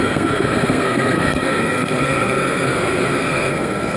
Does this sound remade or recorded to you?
remade